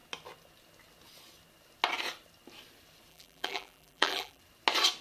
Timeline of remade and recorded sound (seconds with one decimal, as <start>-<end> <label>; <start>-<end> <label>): 0.0-3.1 recorded; 3.1-4.4 remade; 4.4-5.0 recorded